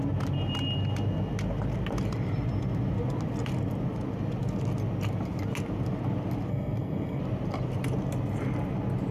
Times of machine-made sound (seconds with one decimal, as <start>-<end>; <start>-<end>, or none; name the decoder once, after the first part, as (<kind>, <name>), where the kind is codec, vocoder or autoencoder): 6.5-7.2 (codec, SNAC)